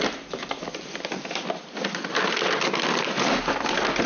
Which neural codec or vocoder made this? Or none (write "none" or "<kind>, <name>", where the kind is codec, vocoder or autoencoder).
none